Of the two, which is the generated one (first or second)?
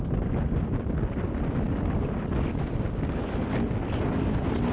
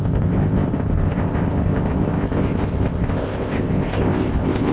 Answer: second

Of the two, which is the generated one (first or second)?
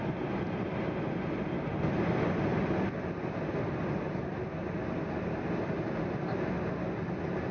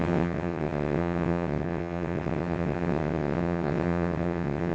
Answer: second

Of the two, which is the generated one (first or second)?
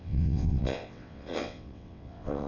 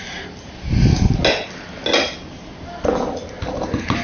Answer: first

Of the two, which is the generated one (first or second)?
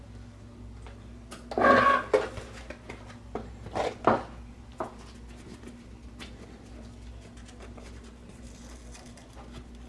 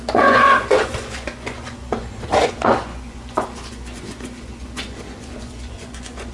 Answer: second